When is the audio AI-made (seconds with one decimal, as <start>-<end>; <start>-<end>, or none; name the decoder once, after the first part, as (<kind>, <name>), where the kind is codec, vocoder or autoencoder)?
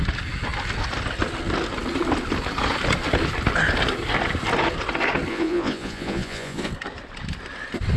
5.3-6.7 (vocoder, Vocos)